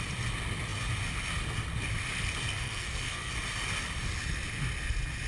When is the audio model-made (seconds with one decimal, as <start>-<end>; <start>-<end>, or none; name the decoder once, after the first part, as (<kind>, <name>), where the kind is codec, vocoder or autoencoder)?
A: 2.5-3.3 (codec, SNAC)